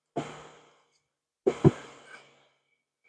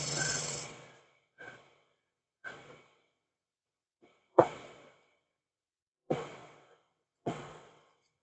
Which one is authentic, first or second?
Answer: first